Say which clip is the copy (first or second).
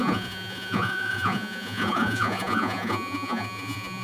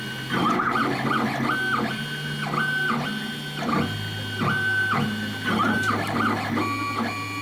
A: first